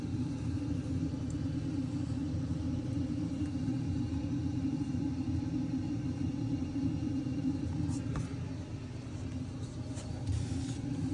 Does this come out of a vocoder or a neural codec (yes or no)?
yes